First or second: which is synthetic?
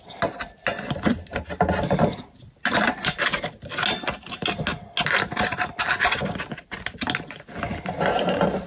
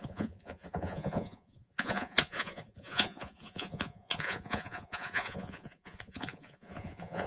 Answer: second